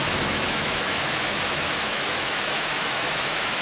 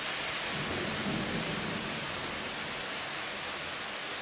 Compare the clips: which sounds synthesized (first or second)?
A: first